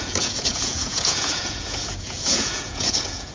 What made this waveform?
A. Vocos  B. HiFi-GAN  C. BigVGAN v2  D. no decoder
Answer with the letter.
A